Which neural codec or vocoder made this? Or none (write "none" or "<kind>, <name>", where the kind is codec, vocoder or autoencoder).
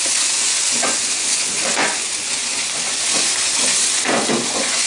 vocoder, Vocos